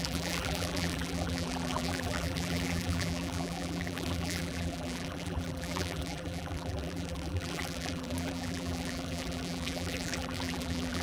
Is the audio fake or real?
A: fake